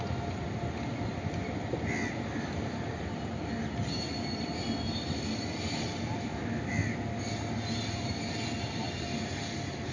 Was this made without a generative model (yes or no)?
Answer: yes